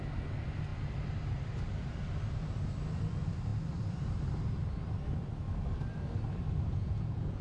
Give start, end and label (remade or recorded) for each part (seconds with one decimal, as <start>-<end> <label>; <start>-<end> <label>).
0.0-6.7 recorded; 6.7-7.4 remade